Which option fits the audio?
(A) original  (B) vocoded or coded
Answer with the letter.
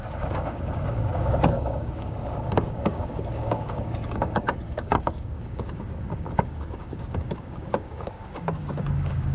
B